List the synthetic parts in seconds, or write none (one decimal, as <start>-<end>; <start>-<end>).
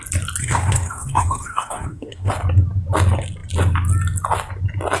0.4-2.3